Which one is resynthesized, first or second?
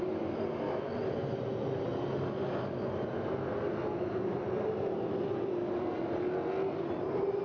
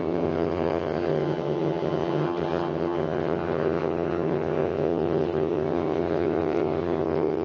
second